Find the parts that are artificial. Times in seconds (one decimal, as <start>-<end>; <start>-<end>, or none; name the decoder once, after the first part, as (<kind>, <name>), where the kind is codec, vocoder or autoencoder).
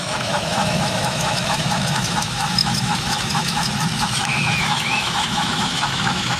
0.0-6.4 (autoencoder, DAC-VAE)